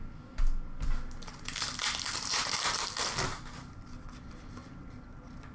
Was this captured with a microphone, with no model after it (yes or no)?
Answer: yes